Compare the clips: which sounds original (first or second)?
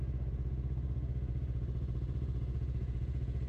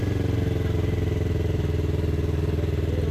second